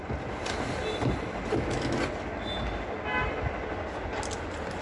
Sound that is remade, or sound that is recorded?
recorded